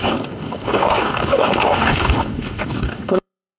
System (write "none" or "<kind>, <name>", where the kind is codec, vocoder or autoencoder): codec, DAC